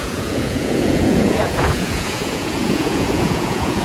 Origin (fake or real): fake